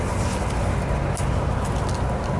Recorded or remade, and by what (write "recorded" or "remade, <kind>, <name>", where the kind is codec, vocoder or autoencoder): recorded